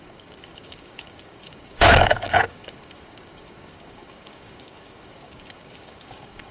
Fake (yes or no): yes